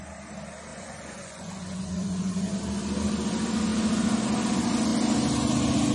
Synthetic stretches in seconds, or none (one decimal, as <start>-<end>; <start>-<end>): 0.7-2.5